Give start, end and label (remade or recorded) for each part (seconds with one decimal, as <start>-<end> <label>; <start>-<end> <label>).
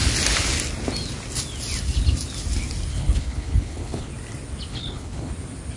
0.0-2.9 recorded; 2.9-4.1 remade; 4.1-4.7 recorded; 4.7-5.3 remade; 5.3-5.8 recorded